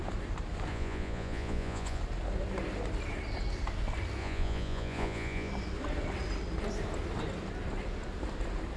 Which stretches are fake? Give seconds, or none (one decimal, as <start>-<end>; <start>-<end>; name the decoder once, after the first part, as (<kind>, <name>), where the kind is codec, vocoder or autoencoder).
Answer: 0.7-2.0 (vocoder, Vocos); 4.2-5.5